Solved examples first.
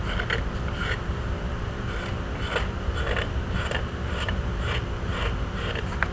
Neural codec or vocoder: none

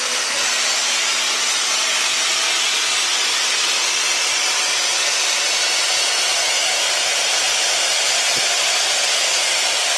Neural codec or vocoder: none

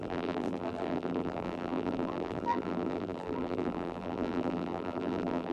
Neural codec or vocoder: vocoder, BigVGAN v2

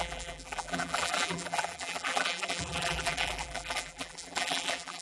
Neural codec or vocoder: vocoder, BigVGAN v2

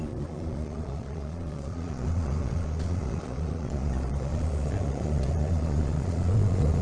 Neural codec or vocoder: vocoder, Vocos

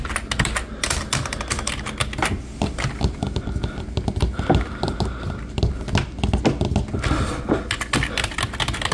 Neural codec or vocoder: none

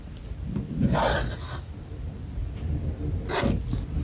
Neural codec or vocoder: none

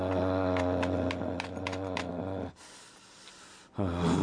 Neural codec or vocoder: none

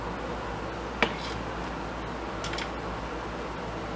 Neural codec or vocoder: none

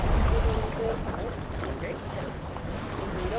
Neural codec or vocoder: none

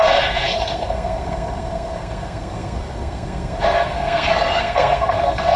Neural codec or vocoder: codec, SNAC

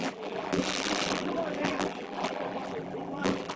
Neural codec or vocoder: vocoder, BigVGAN v2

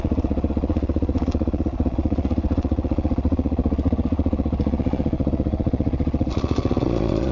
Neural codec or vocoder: vocoder, Vocos